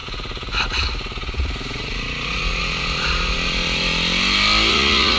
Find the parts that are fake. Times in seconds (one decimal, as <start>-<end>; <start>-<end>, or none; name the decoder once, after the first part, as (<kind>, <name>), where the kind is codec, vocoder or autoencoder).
0.0-3.9 (vocoder, Vocos); 4.7-5.2